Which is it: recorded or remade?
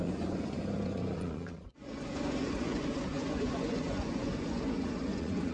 remade